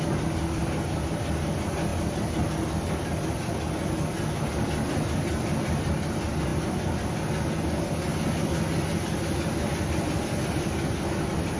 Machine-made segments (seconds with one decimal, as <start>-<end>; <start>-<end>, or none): none